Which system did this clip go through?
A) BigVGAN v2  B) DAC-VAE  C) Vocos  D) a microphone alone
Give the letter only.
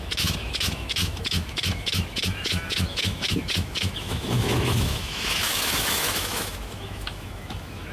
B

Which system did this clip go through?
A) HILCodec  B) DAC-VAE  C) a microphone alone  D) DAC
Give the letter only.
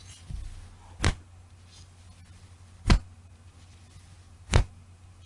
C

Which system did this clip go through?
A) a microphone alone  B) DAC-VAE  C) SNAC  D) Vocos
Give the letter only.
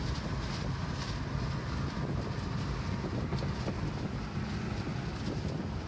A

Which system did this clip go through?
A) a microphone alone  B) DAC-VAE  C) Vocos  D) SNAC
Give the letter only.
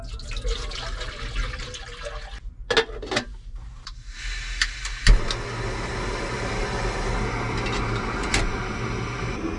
A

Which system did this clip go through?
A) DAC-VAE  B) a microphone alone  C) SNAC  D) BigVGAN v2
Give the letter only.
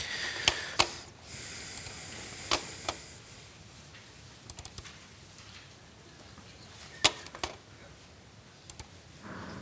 B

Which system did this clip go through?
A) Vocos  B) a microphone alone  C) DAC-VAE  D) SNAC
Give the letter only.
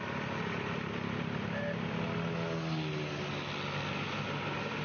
B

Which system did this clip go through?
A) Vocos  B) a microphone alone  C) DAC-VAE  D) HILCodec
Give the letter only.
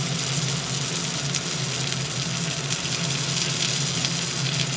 B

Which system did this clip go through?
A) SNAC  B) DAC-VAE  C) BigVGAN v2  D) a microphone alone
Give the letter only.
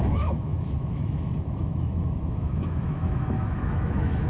B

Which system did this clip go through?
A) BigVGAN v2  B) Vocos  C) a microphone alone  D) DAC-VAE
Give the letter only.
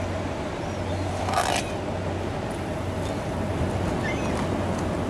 C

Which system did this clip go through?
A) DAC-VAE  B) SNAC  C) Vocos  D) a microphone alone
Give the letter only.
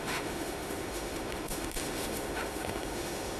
A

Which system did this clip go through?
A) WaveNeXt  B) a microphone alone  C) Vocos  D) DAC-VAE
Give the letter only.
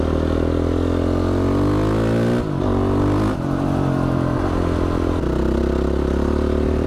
B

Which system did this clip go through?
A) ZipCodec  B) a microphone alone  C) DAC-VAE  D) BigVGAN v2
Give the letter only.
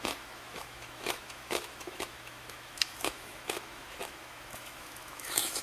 C